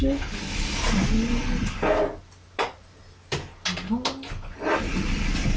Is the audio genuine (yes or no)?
yes